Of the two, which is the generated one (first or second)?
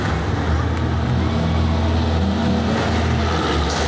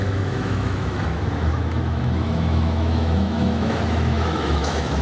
second